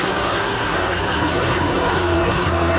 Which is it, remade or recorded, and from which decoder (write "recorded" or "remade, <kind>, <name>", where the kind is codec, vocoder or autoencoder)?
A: remade, codec, SNAC